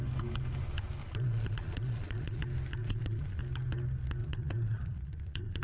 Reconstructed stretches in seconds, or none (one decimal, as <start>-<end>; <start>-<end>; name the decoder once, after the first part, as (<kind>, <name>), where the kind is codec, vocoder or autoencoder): 1.0-2.4 (vocoder, Vocos); 2.8-3.4; 4.2-5.6